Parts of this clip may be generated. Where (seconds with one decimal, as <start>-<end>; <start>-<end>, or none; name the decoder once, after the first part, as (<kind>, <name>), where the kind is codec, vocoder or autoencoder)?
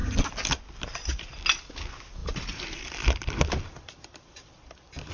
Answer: 2.2-5.1 (vocoder, BigVGAN v2)